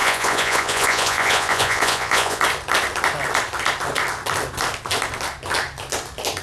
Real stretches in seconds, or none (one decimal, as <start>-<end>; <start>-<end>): 2.4-6.4